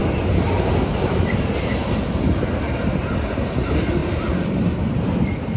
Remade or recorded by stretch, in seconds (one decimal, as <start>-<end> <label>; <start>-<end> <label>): 0.0-5.6 recorded

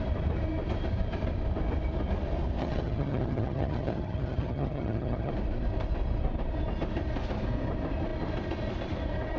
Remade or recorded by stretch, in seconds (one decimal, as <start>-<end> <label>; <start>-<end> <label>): 0.0-2.6 recorded; 2.6-5.3 remade; 5.3-9.4 recorded

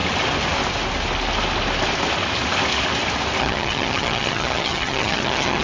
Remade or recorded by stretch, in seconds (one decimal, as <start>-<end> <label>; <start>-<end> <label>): 0.0-3.4 recorded; 3.4-5.6 remade